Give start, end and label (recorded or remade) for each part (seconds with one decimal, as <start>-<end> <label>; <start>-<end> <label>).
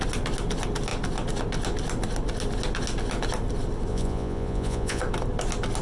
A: 0.0-3.9 recorded; 3.9-5.0 remade; 5.0-5.8 recorded